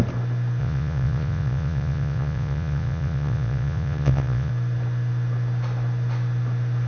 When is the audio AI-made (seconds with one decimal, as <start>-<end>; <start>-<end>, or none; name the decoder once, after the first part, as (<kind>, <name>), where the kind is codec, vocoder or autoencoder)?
0.6-4.5 (vocoder, Vocos)